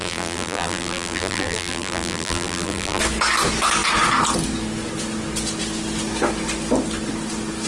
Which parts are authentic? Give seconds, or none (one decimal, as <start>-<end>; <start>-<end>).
3.0-7.7